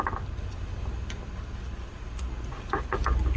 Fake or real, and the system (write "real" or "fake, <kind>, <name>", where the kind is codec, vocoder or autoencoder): real